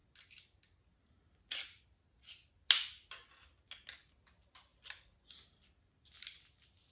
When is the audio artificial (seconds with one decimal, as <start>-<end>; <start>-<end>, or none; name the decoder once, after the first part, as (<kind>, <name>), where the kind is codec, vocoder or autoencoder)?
none